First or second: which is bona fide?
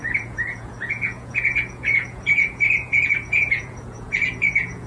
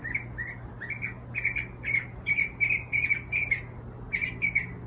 second